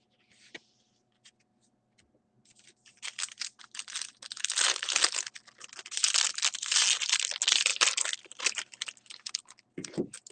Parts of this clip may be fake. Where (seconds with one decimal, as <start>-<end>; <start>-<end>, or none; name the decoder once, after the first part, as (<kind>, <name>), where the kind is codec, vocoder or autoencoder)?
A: 1.5-3.2 (vocoder, BigVGAN v2)

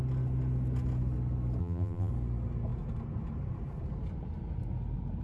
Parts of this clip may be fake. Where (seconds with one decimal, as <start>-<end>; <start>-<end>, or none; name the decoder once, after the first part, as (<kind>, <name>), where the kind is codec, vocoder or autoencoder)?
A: 1.6-2.1 (vocoder, BigVGAN v2)

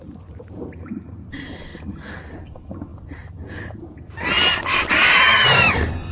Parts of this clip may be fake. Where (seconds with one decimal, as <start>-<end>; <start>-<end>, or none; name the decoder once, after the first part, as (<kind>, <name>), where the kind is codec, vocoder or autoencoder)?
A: 0.0-1.7 (vocoder, BigVGAN v2); 2.3-2.9; 4.9-6.1

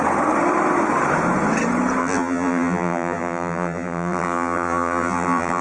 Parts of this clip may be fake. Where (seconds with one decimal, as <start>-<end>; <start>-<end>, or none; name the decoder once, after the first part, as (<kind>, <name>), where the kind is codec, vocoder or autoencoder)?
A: 2.0-5.6 (vocoder, BigVGAN v2)

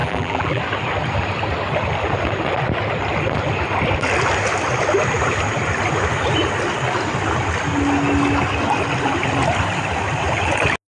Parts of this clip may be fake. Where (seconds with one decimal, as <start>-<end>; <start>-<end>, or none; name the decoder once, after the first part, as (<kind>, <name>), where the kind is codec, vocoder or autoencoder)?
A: 0.0-0.6 (vocoder, BigVGAN v2)

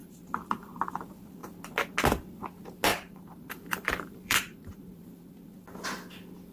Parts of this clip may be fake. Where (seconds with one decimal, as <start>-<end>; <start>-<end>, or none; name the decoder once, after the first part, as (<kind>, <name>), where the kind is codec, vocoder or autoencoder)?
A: 0.0-0.9 (vocoder, BigVGAN v2); 2.9-5.1

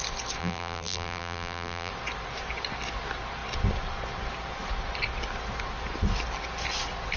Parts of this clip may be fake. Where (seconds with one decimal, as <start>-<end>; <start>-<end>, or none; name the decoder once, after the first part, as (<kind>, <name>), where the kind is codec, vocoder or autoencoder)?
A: 0.4-1.9 (vocoder, BigVGAN v2)

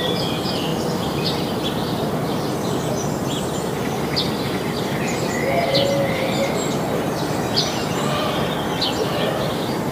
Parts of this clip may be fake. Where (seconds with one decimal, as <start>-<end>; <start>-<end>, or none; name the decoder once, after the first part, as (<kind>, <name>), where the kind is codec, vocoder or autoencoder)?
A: none